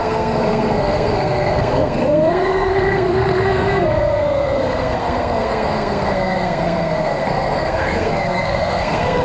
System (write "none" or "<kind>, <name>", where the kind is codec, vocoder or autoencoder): codec, SNAC